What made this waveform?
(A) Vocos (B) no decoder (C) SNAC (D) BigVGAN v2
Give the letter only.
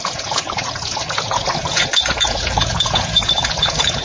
A